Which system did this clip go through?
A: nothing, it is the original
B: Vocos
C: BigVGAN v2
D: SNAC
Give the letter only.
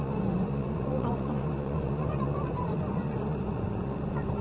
B